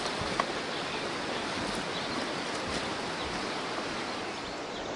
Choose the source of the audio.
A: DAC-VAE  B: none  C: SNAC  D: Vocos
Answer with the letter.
B